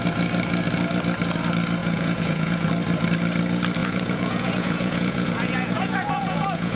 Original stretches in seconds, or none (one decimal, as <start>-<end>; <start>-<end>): 0.0-1.8; 2.7-3.8